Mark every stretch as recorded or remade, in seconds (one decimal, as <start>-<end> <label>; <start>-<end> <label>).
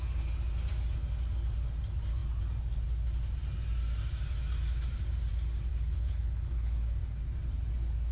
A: 0.0-5.7 recorded; 5.7-7.0 remade; 7.0-8.1 recorded